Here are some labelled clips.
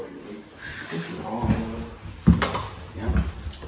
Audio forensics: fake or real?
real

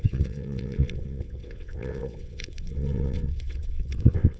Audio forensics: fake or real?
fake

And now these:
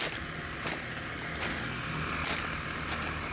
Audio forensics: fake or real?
real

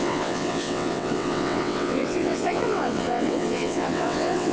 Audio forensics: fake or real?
fake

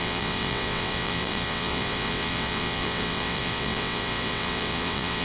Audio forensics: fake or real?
fake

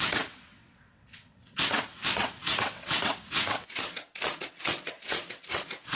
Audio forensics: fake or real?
fake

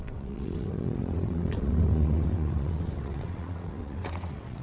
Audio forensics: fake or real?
fake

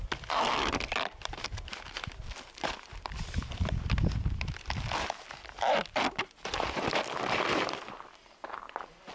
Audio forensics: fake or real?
real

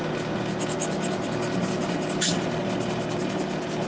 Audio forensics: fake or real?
real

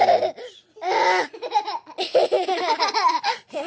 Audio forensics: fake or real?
real